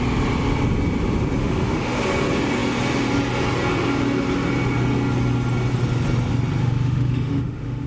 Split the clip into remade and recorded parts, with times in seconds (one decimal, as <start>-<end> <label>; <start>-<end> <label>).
0.0-1.4 recorded; 1.4-2.0 remade; 2.0-6.6 recorded; 6.6-7.9 remade